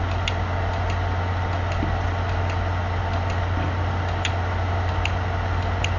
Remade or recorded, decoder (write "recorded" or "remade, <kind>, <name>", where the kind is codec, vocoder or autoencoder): recorded